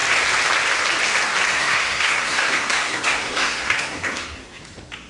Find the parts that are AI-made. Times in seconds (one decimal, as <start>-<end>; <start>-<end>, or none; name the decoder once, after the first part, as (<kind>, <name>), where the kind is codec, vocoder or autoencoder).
1.5-4.6 (codec, SNAC)